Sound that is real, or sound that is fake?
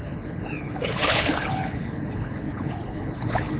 fake